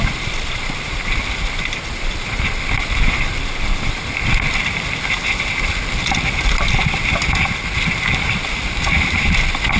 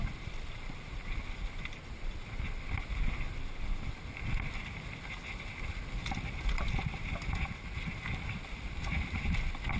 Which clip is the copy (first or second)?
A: first